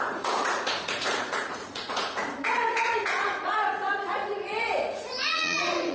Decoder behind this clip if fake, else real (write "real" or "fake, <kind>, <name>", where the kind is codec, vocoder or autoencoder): fake, vocoder, Vocos